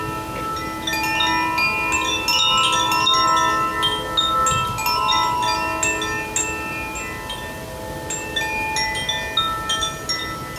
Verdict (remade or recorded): recorded